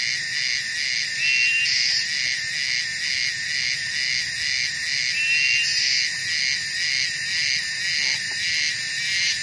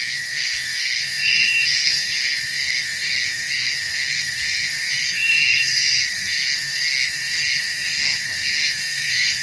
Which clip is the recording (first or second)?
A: first